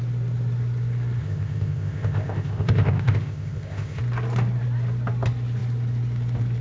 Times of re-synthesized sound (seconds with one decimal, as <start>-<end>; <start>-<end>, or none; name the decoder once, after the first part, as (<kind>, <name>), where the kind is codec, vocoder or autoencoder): 1.2-4.0 (codec, ZipCodec)